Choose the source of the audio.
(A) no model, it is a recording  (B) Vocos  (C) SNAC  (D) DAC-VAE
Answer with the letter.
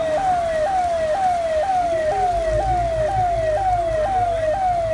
A